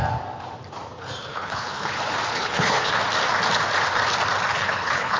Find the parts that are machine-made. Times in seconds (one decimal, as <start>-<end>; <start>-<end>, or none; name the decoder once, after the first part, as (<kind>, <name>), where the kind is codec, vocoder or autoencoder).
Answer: 1.3-1.9 (codec, HILCodec); 2.3-2.9; 4.5-5.2